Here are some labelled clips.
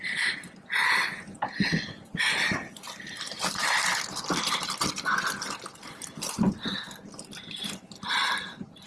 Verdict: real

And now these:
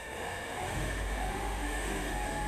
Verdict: fake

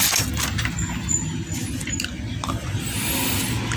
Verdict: real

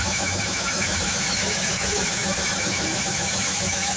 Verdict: fake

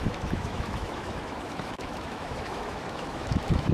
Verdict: fake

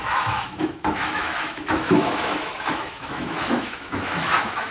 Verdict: fake